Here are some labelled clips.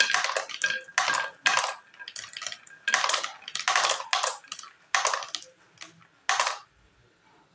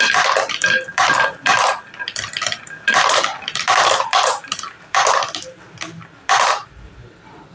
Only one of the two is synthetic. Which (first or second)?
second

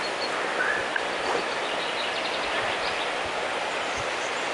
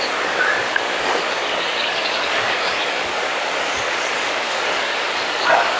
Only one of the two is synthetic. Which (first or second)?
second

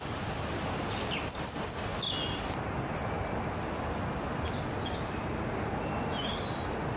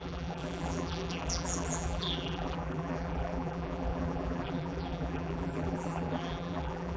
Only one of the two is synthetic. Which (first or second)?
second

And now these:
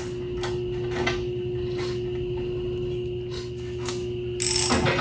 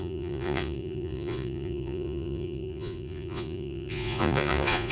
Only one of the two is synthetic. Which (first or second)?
second